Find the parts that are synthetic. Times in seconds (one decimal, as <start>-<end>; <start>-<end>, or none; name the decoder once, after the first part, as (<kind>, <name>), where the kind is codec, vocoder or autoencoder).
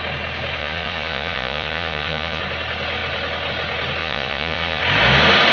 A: 0.6-2.4 (vocoder, Vocos); 4.0-4.8